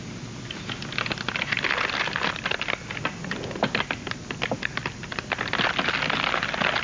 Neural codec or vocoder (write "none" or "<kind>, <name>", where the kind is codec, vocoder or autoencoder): none